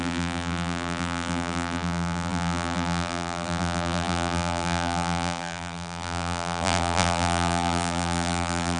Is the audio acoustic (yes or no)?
no